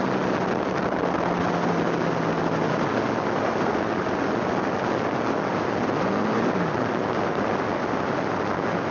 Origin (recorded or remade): recorded